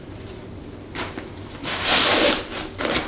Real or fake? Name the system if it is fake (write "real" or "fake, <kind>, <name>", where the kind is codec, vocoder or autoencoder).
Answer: real